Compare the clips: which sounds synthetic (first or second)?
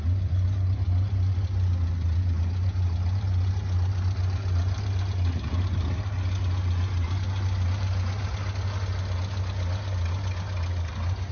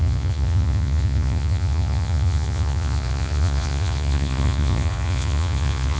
second